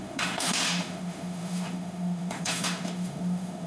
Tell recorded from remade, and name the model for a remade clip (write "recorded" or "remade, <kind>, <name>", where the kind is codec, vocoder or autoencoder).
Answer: remade, autoencoder, DAC-VAE